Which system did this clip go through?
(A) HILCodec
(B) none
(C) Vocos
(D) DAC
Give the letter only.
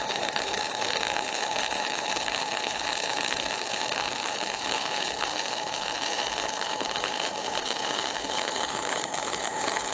A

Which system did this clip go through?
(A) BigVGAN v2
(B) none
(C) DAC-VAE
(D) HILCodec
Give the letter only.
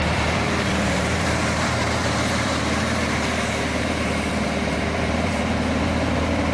A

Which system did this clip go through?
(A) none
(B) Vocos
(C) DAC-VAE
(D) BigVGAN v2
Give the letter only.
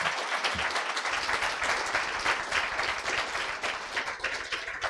A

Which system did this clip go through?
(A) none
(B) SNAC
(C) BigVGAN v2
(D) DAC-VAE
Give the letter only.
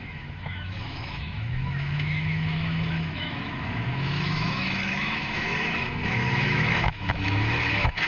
D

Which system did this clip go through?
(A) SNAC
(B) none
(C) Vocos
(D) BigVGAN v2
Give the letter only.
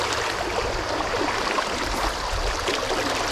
B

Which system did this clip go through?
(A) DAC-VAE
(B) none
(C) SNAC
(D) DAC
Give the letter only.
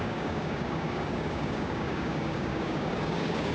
D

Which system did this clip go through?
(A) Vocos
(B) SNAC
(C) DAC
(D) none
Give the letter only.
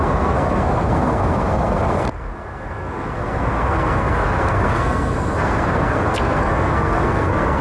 B